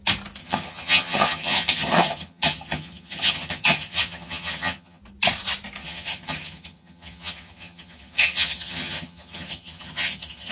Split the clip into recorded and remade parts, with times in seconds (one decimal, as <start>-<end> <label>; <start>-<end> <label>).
0.0-0.4 recorded; 0.4-5.0 remade; 5.0-5.8 recorded; 5.8-10.5 remade

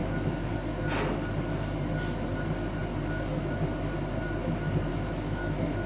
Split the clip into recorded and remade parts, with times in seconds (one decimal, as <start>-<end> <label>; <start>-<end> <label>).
0.0-0.5 remade; 0.5-4.9 recorded; 4.9-5.9 remade

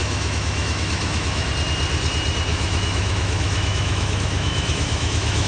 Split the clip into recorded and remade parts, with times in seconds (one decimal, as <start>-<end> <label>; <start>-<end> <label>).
0.0-1.5 remade; 1.5-2.5 recorded; 2.5-5.5 remade

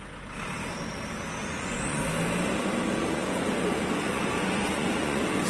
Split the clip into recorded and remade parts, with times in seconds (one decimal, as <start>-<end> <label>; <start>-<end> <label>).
0.0-1.4 recorded; 1.4-2.0 remade; 2.0-3.0 recorded; 3.0-5.5 remade

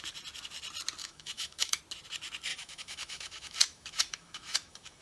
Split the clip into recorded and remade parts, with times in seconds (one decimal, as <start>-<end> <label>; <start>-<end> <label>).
0.0-1.0 recorded; 1.0-1.8 remade; 1.8-2.5 recorded; 2.5-5.0 remade

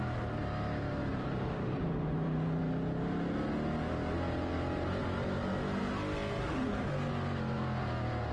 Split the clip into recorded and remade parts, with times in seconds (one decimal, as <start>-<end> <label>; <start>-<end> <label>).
0.0-1.0 recorded; 1.0-2.6 remade; 2.6-8.3 recorded

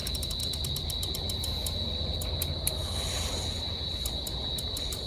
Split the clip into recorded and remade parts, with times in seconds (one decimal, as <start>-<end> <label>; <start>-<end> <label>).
0.0-0.4 recorded; 0.4-1.1 remade; 1.1-5.1 recorded

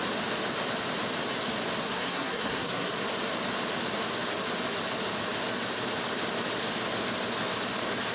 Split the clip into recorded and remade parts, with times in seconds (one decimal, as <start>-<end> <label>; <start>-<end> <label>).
0.0-1.8 recorded; 1.8-2.9 remade; 2.9-8.1 recorded